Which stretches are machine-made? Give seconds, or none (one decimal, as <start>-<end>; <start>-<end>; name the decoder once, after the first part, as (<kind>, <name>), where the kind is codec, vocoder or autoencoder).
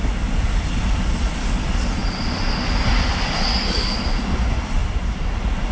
none